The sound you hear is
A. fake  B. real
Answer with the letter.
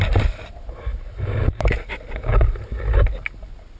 B